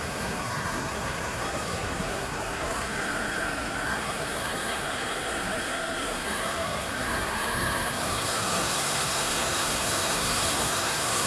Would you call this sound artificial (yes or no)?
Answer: yes